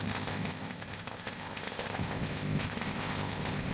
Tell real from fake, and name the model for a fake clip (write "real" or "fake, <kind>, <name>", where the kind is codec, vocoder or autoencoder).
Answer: fake, codec, ZipCodec